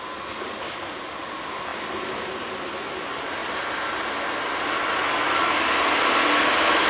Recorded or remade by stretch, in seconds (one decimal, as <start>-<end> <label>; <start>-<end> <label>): 0.0-6.9 recorded